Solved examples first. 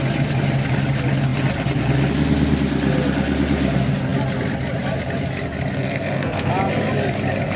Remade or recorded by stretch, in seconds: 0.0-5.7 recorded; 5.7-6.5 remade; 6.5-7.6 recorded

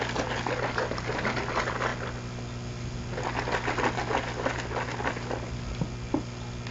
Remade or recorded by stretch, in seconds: 0.0-6.7 recorded

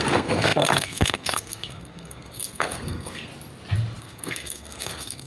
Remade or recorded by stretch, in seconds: 0.0-3.3 remade; 3.3-4.0 recorded; 4.0-5.3 remade